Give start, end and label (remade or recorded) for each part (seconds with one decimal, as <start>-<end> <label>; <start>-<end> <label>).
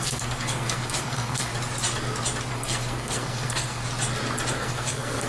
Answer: 0.0-1.5 remade; 1.5-2.5 recorded; 2.5-3.8 remade; 3.8-4.5 recorded; 4.5-5.3 remade